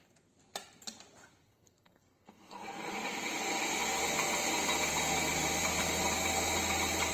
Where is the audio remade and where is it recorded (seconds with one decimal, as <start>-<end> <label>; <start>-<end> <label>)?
0.0-1.5 recorded; 1.5-2.9 remade; 2.9-7.1 recorded